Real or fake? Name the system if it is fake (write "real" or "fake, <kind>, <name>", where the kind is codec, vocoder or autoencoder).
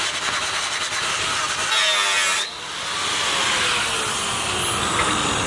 real